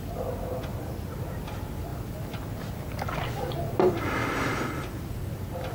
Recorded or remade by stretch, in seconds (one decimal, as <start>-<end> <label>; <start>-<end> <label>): 0.0-0.7 recorded; 0.7-1.4 remade; 1.4-5.7 recorded